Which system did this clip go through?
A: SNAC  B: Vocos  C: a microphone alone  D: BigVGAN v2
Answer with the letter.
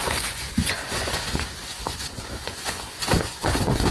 B